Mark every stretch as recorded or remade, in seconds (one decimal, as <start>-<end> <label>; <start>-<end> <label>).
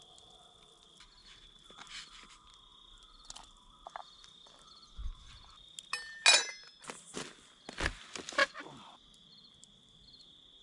0.0-10.6 recorded